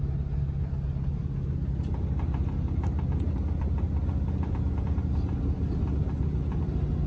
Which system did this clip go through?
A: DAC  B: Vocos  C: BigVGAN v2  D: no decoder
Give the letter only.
D